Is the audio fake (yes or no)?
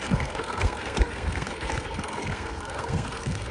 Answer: yes